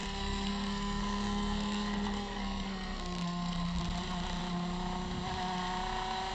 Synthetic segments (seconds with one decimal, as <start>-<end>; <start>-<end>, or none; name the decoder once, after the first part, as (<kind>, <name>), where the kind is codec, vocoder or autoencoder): 0.0-3.8 (codec, SNAC)

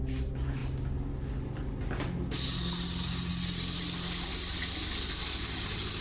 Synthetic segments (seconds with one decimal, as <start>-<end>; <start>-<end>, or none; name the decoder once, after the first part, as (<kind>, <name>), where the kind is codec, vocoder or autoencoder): none